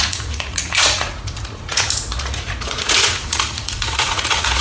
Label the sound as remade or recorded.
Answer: remade